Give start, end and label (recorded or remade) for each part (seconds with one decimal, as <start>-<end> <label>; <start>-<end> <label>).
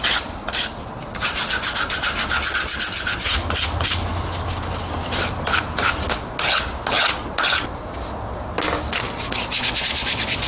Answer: 0.0-10.5 recorded